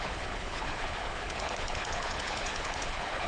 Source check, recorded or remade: remade